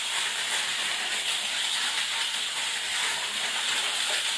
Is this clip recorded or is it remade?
recorded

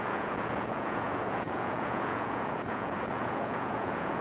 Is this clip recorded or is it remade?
remade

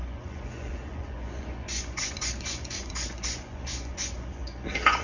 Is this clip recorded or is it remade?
remade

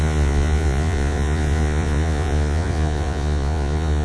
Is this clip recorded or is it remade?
remade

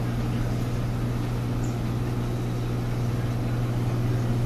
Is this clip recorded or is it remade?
recorded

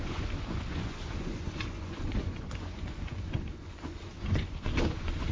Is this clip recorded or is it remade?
remade